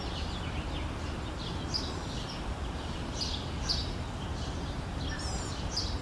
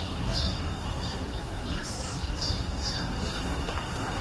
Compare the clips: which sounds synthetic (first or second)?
second